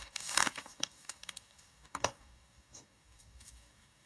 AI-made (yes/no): yes